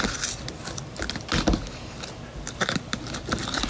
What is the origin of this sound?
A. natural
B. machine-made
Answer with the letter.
A